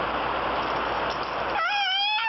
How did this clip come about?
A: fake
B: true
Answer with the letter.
B